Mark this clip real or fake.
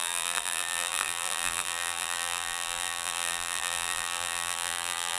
fake